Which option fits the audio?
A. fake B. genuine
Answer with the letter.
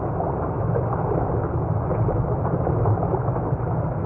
B